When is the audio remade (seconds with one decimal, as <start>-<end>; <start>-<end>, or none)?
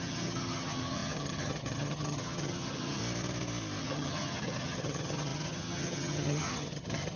0.0-3.0; 3.8-7.2